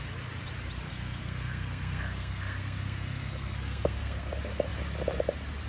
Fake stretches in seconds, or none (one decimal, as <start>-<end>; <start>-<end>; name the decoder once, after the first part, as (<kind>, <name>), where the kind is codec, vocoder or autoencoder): 0.9-4.3 (codec, SNAC)